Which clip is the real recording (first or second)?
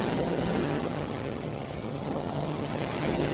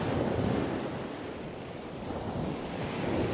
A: second